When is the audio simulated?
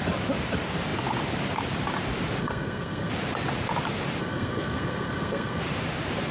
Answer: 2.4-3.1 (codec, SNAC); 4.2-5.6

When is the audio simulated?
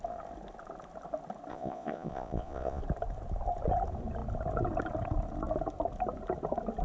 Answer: 1.5-2.8 (vocoder, Vocos)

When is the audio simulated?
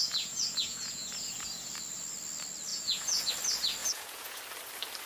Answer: 0.0-1.7 (vocoder, Vocos); 2.7-3.3; 3.8-4.4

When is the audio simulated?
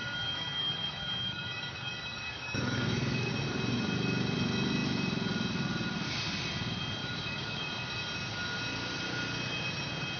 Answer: 0.0-3.3 (codec, DAC); 7.0-7.7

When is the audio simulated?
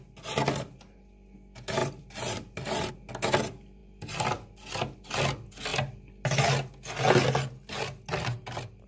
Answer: 1.8-2.9 (vocoder, BigVGAN v2)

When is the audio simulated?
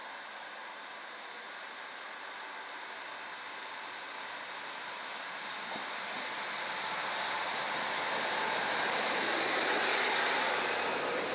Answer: none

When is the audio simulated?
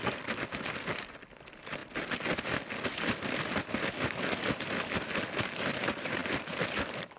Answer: 0.0-7.2 (vocoder, BigVGAN v2)